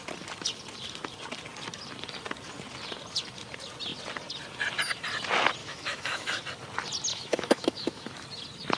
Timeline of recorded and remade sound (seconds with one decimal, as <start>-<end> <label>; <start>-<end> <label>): 0.0-5.6 recorded; 5.6-6.4 remade; 6.4-7.1 recorded; 7.1-8.1 remade; 8.1-8.8 recorded